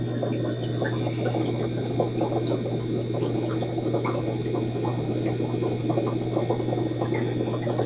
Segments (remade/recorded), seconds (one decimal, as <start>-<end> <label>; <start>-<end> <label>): 0.0-7.9 recorded